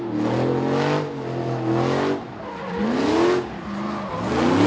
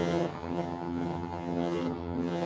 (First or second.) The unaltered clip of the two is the first